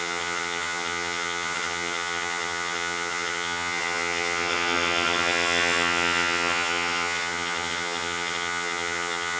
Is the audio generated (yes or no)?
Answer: yes